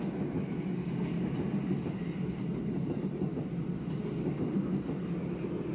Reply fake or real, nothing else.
real